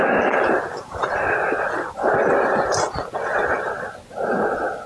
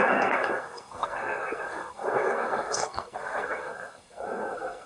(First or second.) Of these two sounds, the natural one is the first